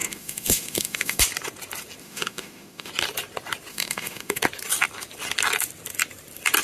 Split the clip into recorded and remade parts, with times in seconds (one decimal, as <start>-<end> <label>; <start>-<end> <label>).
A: 0.0-1.2 remade; 1.2-2.0 recorded; 2.0-2.9 remade; 2.9-3.7 recorded; 3.7-4.4 remade; 4.4-6.6 recorded